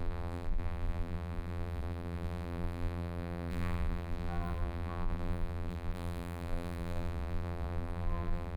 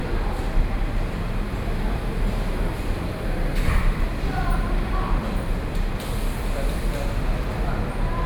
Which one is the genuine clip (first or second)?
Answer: second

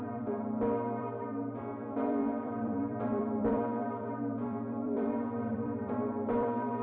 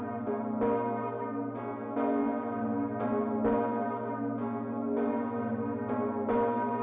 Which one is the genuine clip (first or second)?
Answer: second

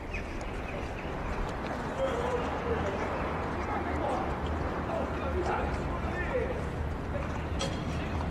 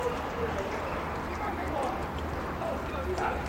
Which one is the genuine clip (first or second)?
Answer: second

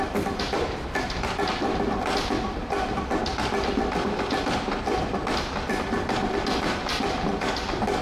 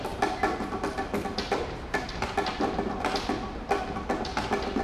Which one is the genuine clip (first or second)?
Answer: second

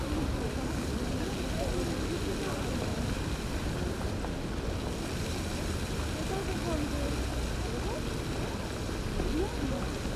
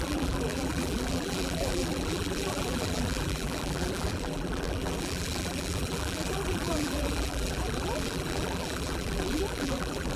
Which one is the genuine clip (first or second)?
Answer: first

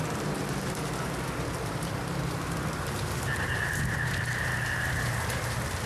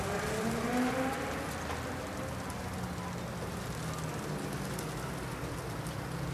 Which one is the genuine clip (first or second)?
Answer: second